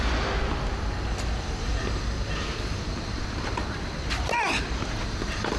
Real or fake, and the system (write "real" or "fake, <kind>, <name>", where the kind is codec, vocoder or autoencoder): real